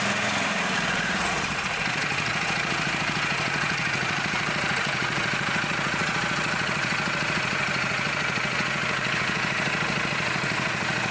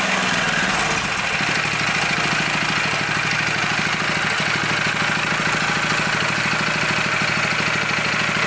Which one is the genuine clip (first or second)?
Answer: second